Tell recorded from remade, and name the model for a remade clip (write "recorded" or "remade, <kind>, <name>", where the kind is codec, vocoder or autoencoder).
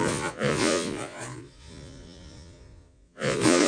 remade, vocoder, Vocos